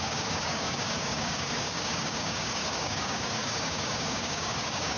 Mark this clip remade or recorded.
remade